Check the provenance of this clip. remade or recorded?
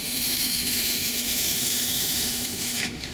remade